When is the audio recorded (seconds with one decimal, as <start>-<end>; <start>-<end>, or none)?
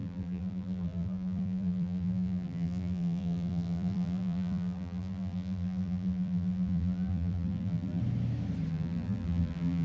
8.0-8.7